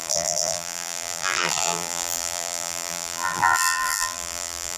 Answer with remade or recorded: remade